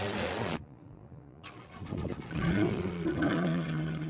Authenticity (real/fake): fake